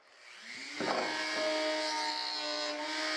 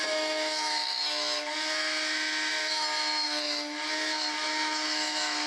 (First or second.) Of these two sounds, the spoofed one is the second